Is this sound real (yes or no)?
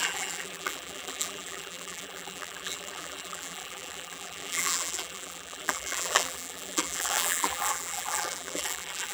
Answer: no